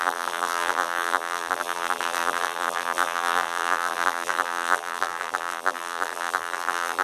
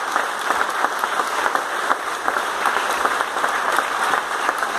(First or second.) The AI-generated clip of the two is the first